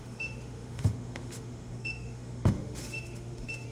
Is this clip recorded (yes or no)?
no